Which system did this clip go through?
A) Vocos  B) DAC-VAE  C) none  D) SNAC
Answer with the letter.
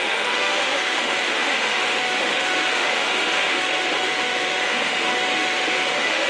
B